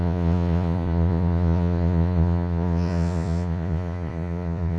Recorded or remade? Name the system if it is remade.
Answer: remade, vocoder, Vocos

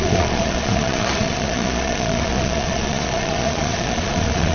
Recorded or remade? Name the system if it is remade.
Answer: remade, vocoder, Vocos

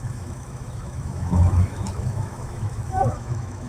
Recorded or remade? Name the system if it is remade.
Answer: remade, autoencoder, DAC-VAE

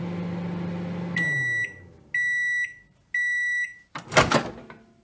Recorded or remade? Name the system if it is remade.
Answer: recorded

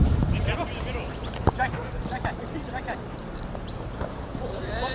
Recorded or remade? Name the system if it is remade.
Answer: remade, vocoder, BigVGAN v2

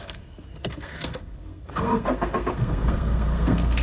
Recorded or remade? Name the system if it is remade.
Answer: remade, codec, SNAC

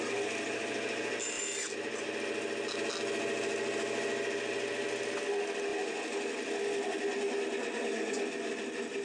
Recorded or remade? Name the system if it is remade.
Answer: recorded